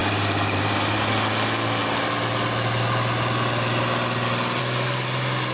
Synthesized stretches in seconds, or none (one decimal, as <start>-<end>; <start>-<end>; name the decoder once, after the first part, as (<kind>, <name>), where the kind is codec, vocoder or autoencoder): 0.0-1.1 (vocoder, BigVGAN v2)